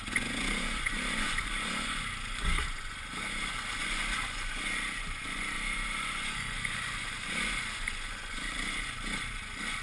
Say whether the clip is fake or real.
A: fake